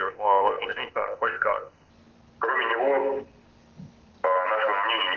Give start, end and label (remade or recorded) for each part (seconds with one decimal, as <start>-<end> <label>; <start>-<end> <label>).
0.0-1.9 remade; 1.9-5.2 recorded